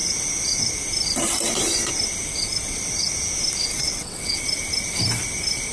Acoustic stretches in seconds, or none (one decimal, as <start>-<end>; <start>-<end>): 0.0-3.7; 4.4-5.7